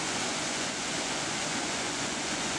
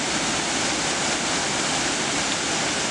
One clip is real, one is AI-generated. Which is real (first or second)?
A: second